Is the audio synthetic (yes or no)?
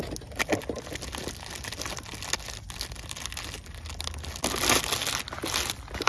no